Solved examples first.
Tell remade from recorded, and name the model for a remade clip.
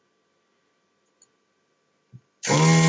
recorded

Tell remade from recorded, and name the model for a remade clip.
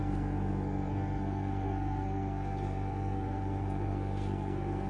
remade, codec, SNAC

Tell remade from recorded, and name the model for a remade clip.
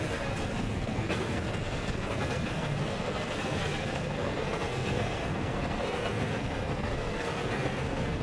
remade, codec, SNAC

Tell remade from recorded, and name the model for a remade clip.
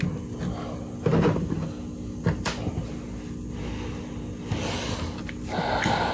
recorded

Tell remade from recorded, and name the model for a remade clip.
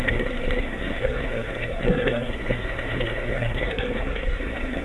remade, codec, SNAC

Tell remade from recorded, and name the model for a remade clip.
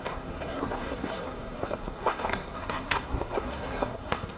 remade, codec, SNAC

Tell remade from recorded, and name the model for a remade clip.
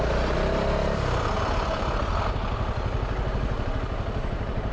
recorded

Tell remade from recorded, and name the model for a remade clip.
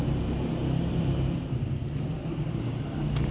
recorded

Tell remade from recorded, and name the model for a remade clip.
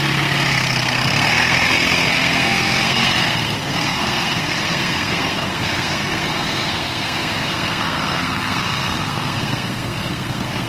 remade, codec, SNAC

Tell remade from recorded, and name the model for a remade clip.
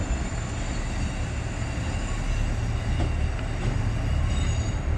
recorded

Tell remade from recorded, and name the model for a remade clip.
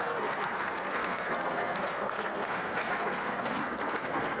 remade, codec, SNAC